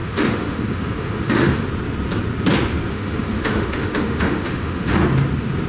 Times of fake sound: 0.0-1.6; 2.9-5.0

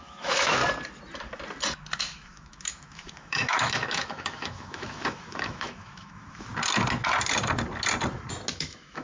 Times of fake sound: 0.0-0.6; 2.0-6.5; 8.5-9.0

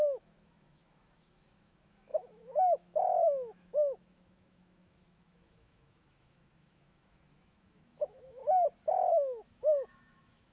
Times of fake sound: 0.0-8.4; 9.1-10.5

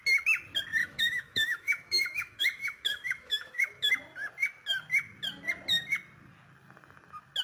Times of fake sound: 0.8-3.9

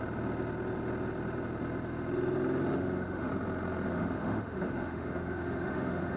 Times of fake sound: 2.7-3.3; 3.9-6.2